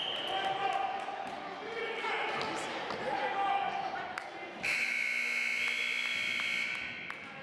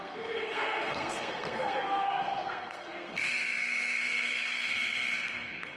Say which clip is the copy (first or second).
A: second